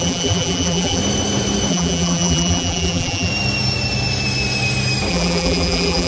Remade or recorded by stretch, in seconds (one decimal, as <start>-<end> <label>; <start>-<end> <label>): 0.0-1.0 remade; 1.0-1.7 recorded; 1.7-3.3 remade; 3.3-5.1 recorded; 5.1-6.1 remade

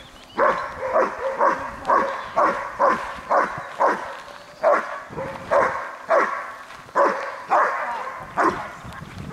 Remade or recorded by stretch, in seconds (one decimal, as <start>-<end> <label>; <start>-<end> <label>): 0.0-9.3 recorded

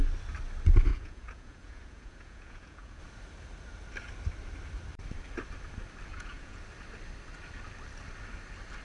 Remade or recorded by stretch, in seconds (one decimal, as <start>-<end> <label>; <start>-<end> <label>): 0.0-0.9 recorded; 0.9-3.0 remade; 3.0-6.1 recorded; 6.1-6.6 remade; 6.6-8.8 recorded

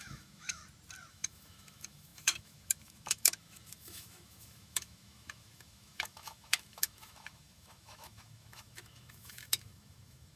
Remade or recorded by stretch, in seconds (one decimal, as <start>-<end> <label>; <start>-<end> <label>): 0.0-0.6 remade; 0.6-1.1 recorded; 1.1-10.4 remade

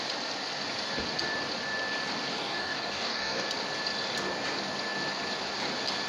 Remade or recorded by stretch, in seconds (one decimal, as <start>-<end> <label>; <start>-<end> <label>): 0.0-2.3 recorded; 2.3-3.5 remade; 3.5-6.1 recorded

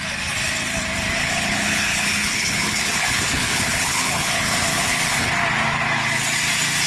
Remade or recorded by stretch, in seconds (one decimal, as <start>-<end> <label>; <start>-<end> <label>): 0.0-1.2 recorded; 1.2-5.3 remade; 5.3-6.9 recorded

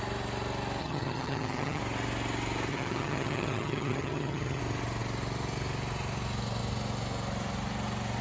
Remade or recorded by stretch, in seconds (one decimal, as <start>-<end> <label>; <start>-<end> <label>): 0.0-0.8 recorded; 0.8-1.8 remade; 1.8-2.7 recorded; 2.7-4.6 remade; 4.6-8.2 recorded

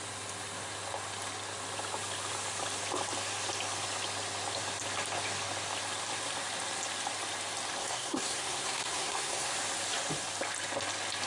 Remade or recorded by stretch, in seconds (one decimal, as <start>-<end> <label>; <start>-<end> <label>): 0.0-7.8 recorded; 7.8-9.5 remade; 9.5-11.3 recorded